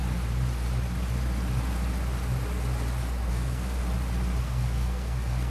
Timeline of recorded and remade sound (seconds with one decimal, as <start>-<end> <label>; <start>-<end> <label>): 0.0-3.3 recorded; 3.3-3.8 remade; 3.8-4.4 recorded; 4.4-5.5 remade